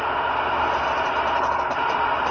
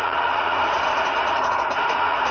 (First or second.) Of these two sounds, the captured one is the first